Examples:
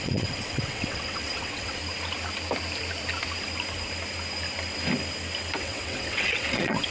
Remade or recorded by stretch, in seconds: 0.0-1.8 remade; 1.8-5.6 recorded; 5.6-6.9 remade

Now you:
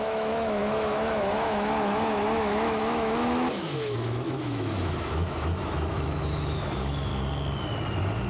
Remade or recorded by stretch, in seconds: 0.0-7.1 remade; 7.1-8.3 recorded